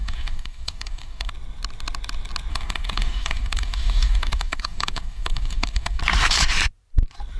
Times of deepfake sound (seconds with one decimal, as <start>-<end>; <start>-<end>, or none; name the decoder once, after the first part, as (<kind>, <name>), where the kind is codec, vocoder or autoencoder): 0.0-1.3 (codec, DAC); 2.5-6.0